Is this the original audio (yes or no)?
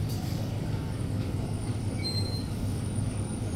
no